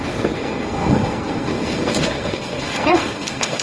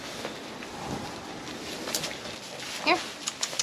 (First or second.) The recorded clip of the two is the second